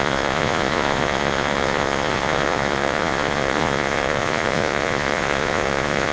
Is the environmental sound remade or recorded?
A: remade